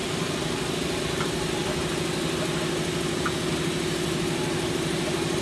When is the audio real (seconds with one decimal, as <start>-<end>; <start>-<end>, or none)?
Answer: 0.0-5.4